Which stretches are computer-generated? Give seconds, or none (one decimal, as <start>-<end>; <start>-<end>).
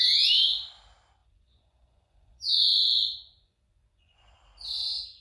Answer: 1.2-4.3